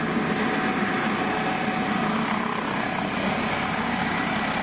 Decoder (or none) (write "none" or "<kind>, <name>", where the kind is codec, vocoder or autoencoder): none